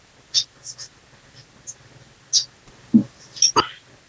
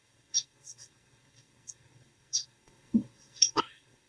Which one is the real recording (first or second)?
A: first